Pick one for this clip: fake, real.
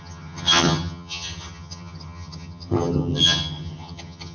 fake